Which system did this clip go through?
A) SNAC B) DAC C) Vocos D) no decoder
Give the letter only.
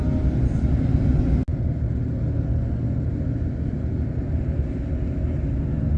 D